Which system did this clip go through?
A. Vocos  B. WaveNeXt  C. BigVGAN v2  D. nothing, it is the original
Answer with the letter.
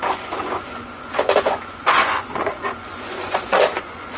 A